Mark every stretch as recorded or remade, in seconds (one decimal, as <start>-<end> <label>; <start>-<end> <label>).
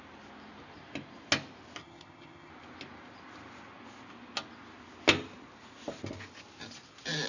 0.0-1.8 recorded; 1.8-2.5 remade; 2.5-7.3 recorded